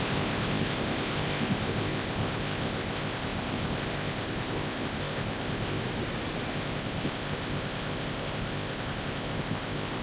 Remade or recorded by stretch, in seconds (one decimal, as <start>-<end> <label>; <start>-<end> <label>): 0.0-5.8 remade; 5.8-6.5 recorded; 6.5-10.0 remade